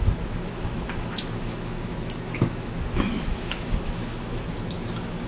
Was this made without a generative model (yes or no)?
no